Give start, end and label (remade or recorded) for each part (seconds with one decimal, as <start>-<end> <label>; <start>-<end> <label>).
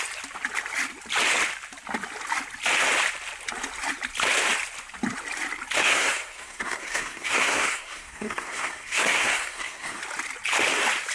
0.0-5.8 recorded; 5.8-10.0 remade; 10.0-11.1 recorded